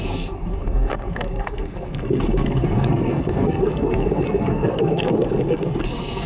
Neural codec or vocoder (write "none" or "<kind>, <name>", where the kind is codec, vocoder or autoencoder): codec, SNAC